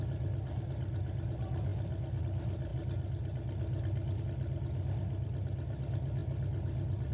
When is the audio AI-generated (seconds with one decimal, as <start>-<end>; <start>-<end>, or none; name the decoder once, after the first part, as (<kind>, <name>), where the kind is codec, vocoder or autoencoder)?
none